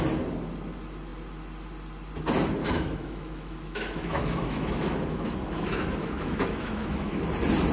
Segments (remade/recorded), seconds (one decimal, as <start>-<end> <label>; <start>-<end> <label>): 0.0-2.6 recorded; 2.6-7.2 remade; 7.2-7.7 recorded